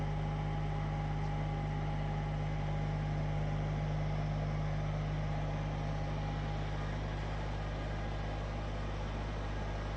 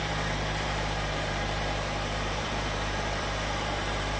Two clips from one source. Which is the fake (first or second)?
second